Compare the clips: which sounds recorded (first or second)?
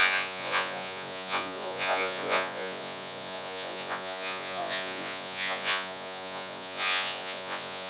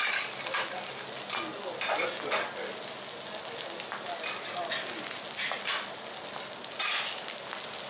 second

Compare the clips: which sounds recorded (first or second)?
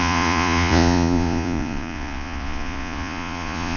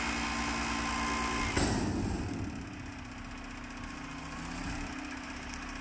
second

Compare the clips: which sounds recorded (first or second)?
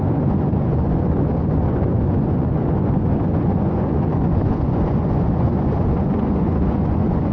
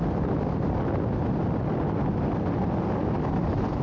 second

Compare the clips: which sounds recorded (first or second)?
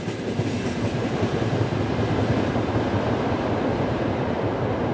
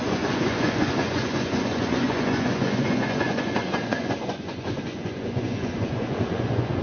first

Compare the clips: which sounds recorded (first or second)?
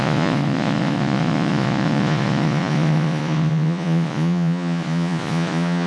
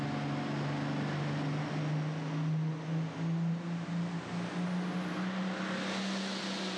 second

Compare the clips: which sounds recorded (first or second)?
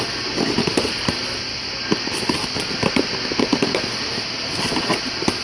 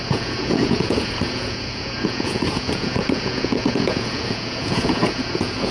first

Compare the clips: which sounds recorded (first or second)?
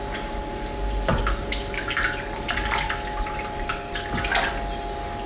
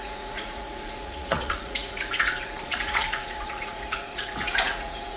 first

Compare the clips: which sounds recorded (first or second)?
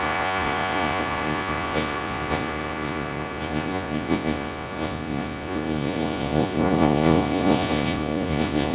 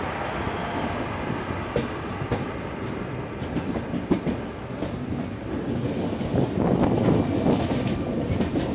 second